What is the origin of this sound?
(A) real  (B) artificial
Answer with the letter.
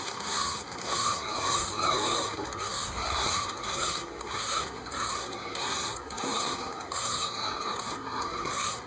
B